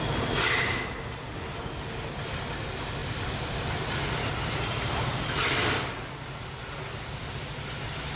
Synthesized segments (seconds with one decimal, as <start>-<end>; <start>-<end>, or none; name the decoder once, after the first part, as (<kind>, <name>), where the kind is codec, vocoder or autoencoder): none